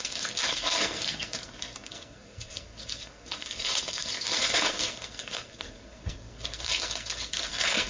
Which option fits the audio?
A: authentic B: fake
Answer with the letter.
B